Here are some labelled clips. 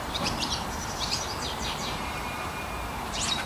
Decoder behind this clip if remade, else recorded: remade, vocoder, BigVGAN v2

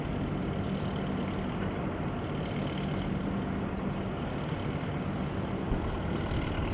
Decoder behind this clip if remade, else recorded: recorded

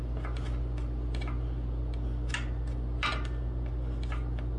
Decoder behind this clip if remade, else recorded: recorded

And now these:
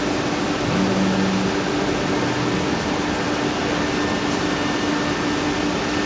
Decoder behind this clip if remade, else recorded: recorded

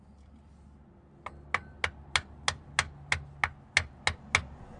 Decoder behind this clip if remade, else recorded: recorded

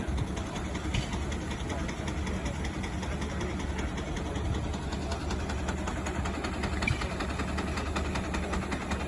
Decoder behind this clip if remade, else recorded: recorded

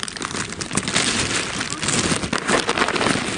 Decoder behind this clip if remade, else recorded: recorded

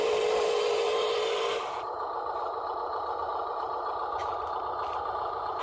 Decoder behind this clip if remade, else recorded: remade, vocoder, BigVGAN v2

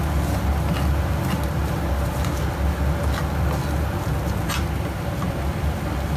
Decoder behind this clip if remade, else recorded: recorded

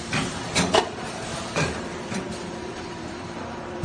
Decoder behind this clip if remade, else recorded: remade, vocoder, BigVGAN v2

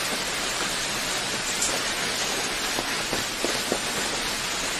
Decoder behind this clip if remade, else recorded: recorded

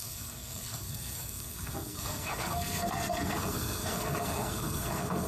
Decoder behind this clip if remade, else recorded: remade, codec, SNAC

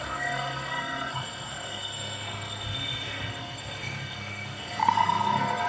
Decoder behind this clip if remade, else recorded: remade, codec, SNAC